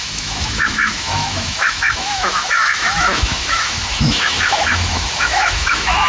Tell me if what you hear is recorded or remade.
remade